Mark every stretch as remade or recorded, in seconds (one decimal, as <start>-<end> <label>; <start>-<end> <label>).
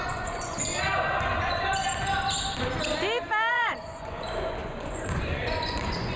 0.0-0.7 remade; 0.7-1.4 recorded; 1.4-1.8 remade; 1.8-3.5 recorded; 3.5-6.2 remade